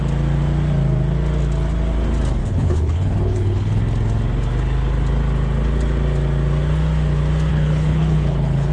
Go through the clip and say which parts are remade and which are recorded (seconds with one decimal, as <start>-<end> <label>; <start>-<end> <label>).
0.0-2.4 recorded; 2.4-3.8 remade; 3.8-7.5 recorded; 7.5-8.7 remade

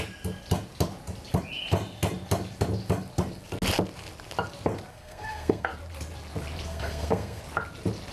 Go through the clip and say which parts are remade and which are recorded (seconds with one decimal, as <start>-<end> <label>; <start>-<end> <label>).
0.0-4.9 recorded; 4.9-5.7 remade; 5.7-6.7 recorded; 6.7-7.4 remade; 7.4-8.1 recorded

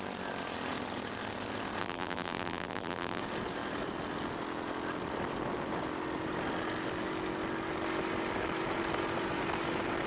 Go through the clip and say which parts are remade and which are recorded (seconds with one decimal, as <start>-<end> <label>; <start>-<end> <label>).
0.0-1.8 recorded; 1.8-3.2 remade; 3.2-10.1 recorded

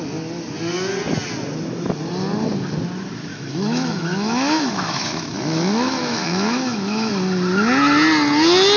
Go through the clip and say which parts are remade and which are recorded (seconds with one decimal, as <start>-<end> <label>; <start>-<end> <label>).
0.0-3.3 recorded; 3.3-7.1 remade; 7.1-8.8 recorded